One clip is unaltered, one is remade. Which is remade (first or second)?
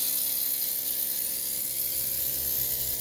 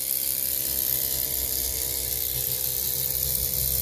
first